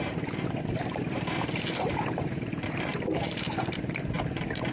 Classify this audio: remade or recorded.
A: remade